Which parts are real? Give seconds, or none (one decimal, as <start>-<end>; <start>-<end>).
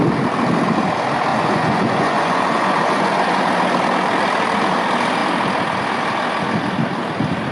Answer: 0.0-1.3; 3.4-7.5